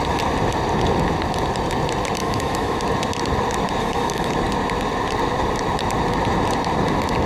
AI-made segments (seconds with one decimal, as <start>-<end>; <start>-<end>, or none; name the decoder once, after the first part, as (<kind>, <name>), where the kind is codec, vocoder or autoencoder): 2.2-2.8 (autoencoder, DAC-VAE); 3.8-4.3

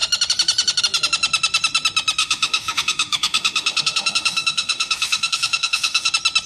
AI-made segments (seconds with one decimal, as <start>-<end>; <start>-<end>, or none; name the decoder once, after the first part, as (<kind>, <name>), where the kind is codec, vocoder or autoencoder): 2.2-6.1 (autoencoder, DAC-VAE)